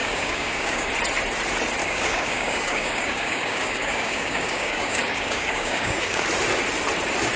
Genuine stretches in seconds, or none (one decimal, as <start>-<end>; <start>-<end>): 0.9-1.8; 6.2-7.4